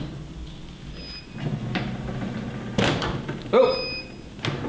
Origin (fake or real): real